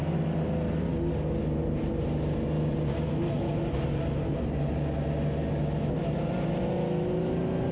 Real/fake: real